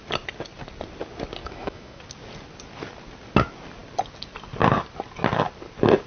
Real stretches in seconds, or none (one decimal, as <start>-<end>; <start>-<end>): 0.0-1.4; 2.0-6.1